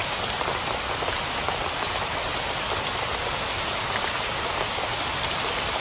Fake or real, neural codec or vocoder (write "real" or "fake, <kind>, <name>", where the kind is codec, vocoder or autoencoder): fake, vocoder, BigVGAN v2